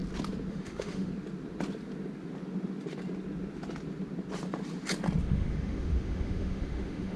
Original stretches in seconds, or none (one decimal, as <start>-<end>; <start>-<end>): 0.0-0.5; 1.1-5.2